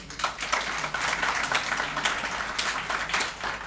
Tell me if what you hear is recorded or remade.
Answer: recorded